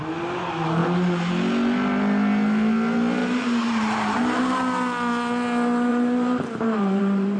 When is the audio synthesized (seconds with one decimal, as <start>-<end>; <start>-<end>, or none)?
3.2-4.4; 5.9-7.4